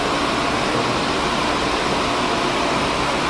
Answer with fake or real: fake